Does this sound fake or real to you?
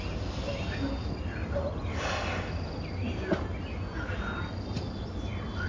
real